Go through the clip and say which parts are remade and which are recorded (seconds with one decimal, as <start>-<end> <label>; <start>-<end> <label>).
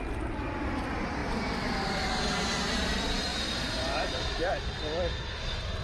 0.0-3.3 recorded; 3.3-4.5 remade; 4.5-5.8 recorded